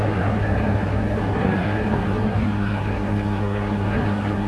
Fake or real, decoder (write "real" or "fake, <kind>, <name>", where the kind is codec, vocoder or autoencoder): fake, codec, SNAC